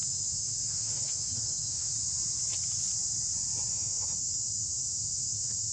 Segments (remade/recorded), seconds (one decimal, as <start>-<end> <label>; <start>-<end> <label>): 0.0-1.9 remade; 1.9-3.7 recorded; 3.7-5.7 remade